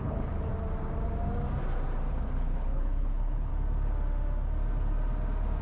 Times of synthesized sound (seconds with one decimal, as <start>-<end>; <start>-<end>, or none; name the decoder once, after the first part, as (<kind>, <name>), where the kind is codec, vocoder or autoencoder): 0.0-0.5 (codec, HILCodec); 2.1-3.5